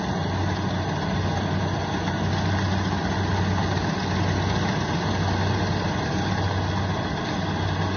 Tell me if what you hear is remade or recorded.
recorded